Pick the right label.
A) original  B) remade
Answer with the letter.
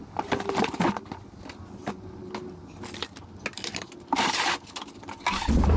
A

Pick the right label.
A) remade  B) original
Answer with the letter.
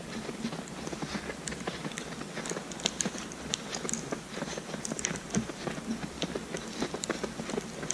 B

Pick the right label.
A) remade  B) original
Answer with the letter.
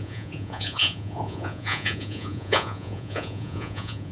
A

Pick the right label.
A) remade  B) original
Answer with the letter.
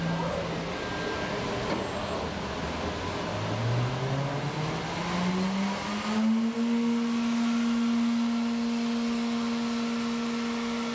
B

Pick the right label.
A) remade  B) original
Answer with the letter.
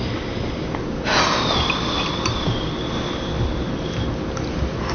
B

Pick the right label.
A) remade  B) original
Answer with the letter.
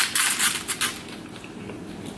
A